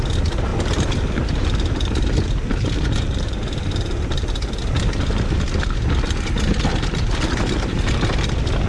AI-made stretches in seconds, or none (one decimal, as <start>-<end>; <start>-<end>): none